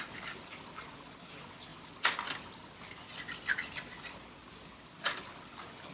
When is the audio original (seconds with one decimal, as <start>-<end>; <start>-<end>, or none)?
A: 0.0-5.9